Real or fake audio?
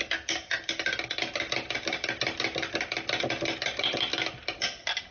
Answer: real